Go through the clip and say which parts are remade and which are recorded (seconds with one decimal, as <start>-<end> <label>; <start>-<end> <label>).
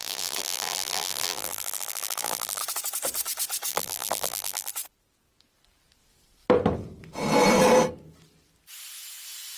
0.0-2.6 remade; 2.6-3.7 recorded; 3.7-4.7 remade; 4.7-9.6 recorded